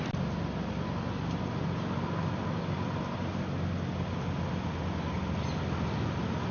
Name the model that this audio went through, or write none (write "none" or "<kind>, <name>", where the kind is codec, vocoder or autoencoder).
none